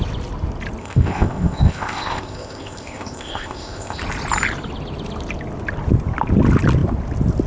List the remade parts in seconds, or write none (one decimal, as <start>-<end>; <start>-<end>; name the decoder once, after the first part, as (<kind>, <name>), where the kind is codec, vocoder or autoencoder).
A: 0.8-4.0 (codec, ZipCodec)